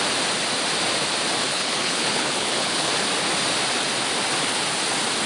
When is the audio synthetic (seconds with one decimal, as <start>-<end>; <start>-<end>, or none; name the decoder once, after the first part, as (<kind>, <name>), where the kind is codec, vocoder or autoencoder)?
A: 1.5-2.9 (codec, HILCodec)